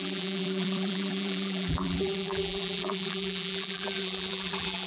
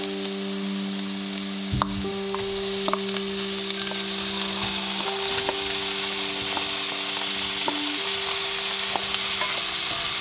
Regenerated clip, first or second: first